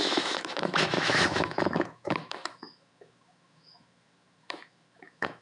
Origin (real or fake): fake